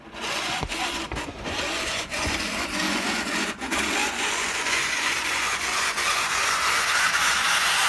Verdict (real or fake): fake